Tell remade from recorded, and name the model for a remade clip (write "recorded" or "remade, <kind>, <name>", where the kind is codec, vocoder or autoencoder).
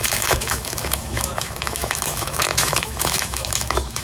remade, autoencoder, DAC-VAE